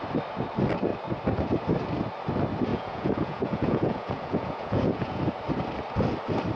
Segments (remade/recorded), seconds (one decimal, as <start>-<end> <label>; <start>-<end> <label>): 0.0-2.7 recorded; 2.7-5.2 remade; 5.2-6.6 recorded